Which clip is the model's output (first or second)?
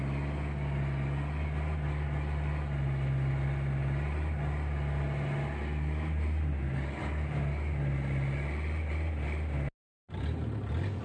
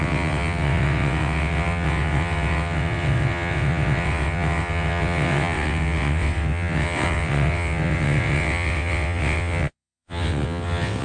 second